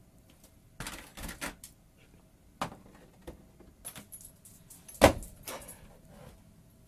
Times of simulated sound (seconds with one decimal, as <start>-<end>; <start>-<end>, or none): none